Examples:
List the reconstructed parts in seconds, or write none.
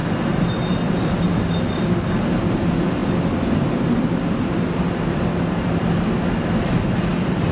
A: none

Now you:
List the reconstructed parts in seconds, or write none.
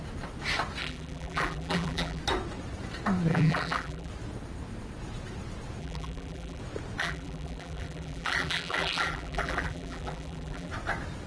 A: 0.8-2.2; 3.3-4.1; 5.8-6.6; 7.0-10.7